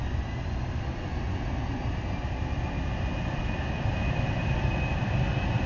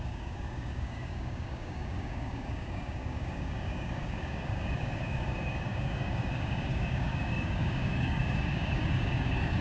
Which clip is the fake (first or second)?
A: second